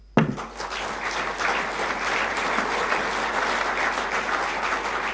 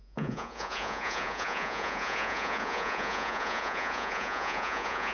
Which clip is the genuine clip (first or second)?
first